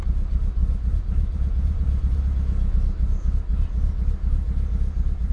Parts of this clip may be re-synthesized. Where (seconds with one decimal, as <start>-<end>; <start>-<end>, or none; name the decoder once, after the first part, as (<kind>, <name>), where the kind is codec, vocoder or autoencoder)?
0.6-2.2 (vocoder, BigVGAN v2)